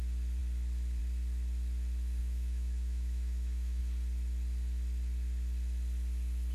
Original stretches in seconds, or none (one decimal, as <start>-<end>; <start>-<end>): 0.0-2.2; 3.8-6.5